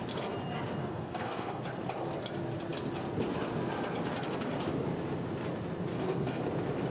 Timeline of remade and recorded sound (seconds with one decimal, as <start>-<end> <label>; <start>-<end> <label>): 0.0-0.8 recorded; 0.8-1.6 remade; 1.6-5.9 recorded; 5.9-6.4 remade; 6.4-6.9 recorded